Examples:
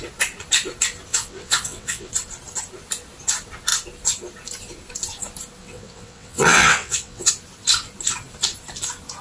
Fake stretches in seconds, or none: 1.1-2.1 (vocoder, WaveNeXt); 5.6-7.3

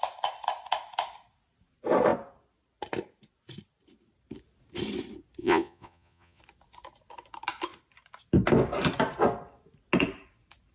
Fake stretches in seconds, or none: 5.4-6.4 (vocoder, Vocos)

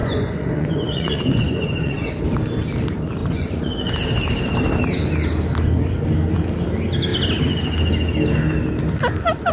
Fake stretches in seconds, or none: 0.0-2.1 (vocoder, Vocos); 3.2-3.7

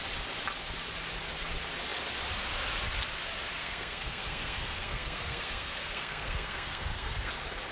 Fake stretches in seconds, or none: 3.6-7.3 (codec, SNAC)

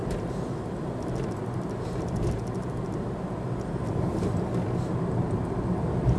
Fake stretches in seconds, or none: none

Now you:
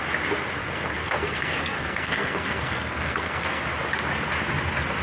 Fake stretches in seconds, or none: 0.6-3.6 (codec, SNAC)